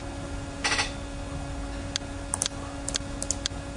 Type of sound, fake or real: real